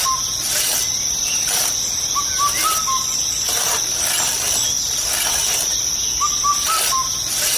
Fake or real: real